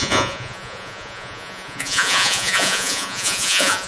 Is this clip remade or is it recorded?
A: remade